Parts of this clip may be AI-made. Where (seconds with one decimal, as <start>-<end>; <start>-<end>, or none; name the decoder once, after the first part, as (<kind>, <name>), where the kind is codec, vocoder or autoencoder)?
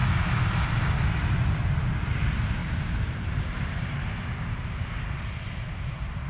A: 2.6-4.1 (vocoder, BigVGAN v2)